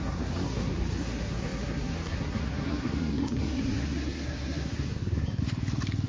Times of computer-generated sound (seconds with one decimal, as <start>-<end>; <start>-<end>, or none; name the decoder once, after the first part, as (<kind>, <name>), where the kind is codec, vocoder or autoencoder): 0.0-5.4 (codec, SNAC)